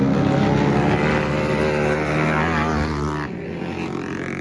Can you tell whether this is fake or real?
real